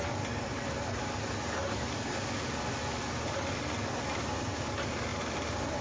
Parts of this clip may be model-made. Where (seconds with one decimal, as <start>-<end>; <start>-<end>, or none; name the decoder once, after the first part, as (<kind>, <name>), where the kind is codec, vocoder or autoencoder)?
none